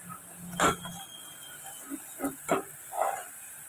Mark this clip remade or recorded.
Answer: recorded